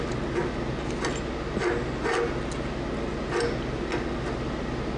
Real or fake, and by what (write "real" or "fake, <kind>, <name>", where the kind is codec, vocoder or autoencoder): real